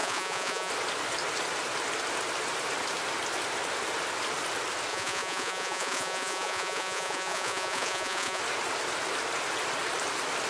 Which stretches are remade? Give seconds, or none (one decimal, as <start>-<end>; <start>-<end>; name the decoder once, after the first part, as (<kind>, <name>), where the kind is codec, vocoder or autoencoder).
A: 0.0-0.7 (vocoder, Vocos); 4.9-8.4